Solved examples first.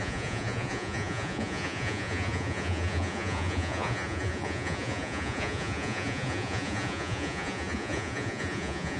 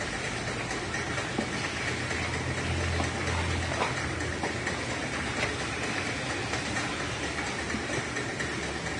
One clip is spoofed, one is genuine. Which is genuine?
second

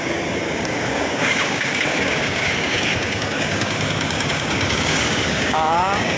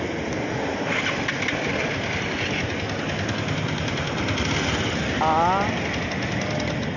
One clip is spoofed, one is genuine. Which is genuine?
second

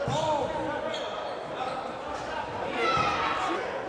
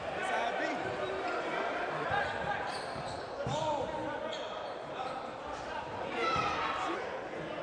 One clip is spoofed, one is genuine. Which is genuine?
first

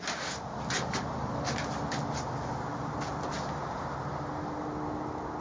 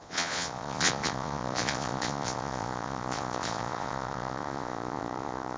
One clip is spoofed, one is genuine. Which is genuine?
first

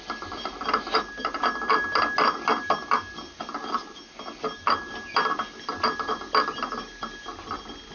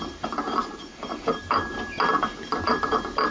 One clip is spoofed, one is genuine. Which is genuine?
first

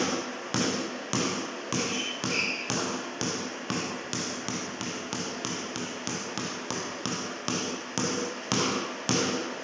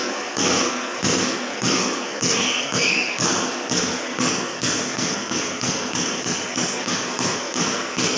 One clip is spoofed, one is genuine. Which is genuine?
first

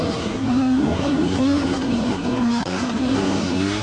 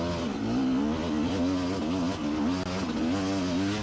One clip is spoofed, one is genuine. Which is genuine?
second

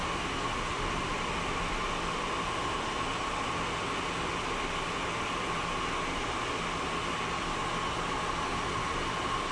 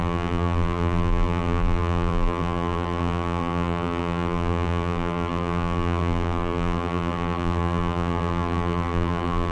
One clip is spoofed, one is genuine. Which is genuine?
first